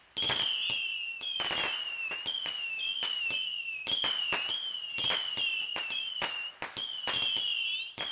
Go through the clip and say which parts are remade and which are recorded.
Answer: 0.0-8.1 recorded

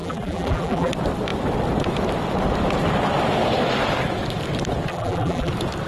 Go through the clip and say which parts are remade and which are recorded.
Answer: 0.0-0.9 remade; 0.9-4.9 recorded; 4.9-5.5 remade; 5.5-5.9 recorded

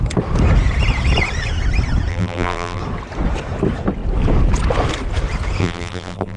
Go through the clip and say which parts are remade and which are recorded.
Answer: 0.0-2.1 recorded; 2.1-2.8 remade; 2.8-5.6 recorded; 5.6-6.4 remade

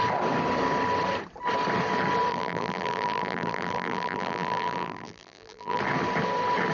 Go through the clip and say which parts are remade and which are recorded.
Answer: 0.0-2.3 recorded; 2.3-5.8 remade; 5.8-6.7 recorded

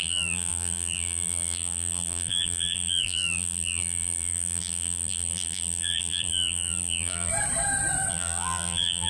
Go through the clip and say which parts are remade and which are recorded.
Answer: 0.0-7.3 remade; 7.3-8.1 recorded; 8.1-9.1 remade

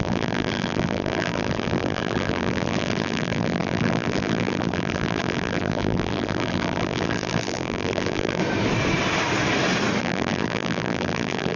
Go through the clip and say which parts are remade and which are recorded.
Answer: 0.0-8.4 remade; 8.4-10.0 recorded; 10.0-11.6 remade